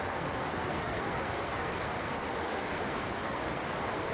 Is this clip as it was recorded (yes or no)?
no